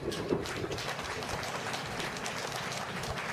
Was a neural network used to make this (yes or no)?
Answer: no